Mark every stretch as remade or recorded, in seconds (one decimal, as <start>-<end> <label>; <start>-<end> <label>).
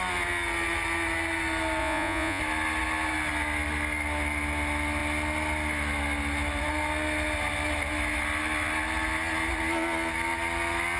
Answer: 0.0-1.8 recorded; 1.8-2.4 remade; 2.4-11.0 recorded